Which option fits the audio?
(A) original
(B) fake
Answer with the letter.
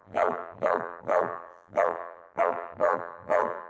B